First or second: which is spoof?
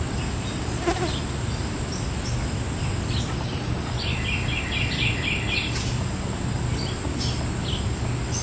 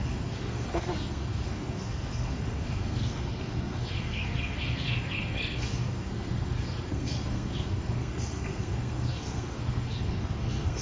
second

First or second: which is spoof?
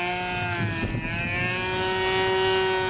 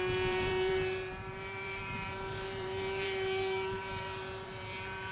second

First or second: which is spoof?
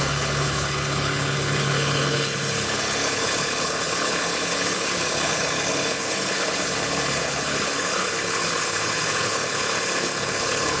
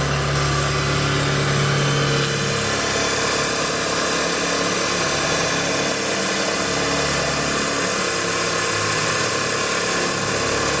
first